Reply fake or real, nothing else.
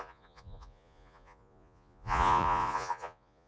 fake